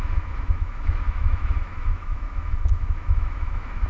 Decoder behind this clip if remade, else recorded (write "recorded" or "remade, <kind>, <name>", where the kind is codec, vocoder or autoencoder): remade, autoencoder, DAC-VAE